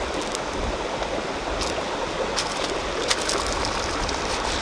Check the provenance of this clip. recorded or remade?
recorded